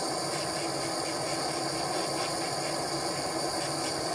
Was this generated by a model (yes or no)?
no